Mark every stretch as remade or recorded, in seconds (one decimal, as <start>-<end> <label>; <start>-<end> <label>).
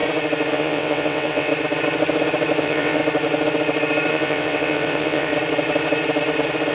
0.0-0.5 recorded; 0.5-1.5 remade; 1.5-2.6 recorded; 2.6-3.0 remade; 3.0-4.1 recorded; 4.1-5.3 remade; 5.3-6.7 recorded